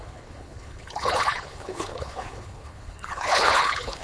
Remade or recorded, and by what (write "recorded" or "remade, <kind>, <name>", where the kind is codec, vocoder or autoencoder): remade, codec, HILCodec